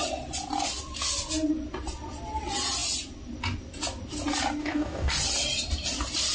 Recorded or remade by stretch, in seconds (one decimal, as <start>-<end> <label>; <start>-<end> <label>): 0.0-4.6 recorded; 4.6-5.1 remade; 5.1-6.3 recorded